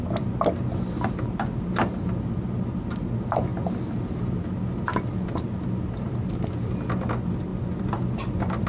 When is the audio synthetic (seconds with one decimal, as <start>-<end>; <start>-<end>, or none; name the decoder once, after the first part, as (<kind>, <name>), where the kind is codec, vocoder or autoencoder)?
none